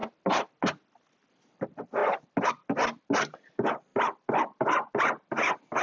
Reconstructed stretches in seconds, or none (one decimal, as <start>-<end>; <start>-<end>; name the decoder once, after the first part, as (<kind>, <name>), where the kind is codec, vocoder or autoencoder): none